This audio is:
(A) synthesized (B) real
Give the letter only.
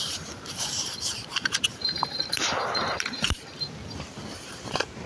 A